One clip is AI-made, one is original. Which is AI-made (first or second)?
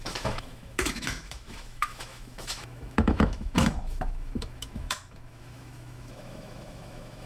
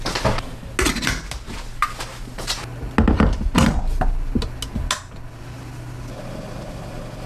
first